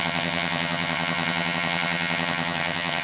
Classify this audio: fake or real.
fake